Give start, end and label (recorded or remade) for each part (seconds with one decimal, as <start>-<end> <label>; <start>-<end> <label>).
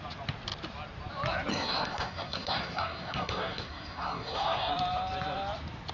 0.0-1.5 recorded; 1.5-4.7 remade; 4.7-5.9 recorded